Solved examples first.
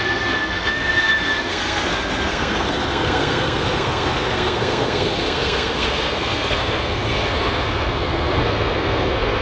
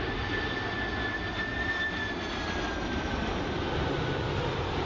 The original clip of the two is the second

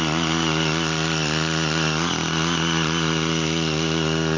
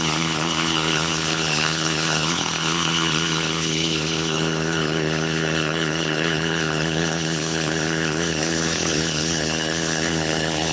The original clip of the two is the first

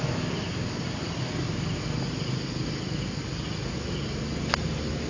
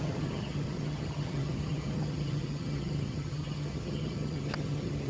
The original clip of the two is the first